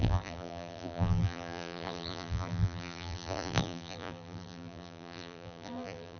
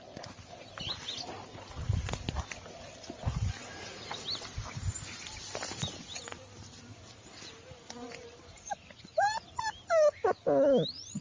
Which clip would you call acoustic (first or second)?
second